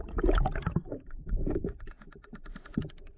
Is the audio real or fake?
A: fake